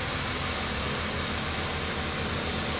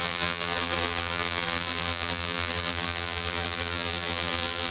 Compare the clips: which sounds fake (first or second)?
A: second